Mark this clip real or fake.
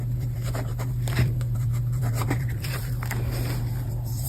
fake